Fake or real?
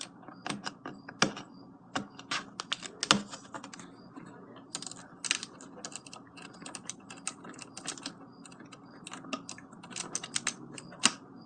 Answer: real